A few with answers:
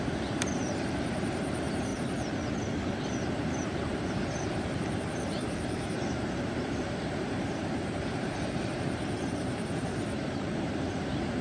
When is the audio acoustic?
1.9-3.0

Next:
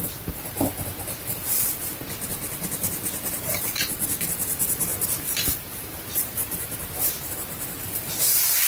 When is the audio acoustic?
none

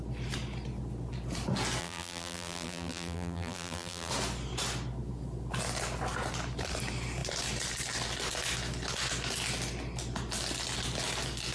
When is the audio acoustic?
0.0-1.8; 4.1-11.5

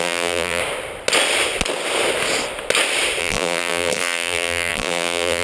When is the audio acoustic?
0.6-3.2

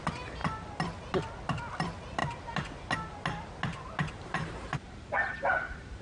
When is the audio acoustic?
0.0-3.7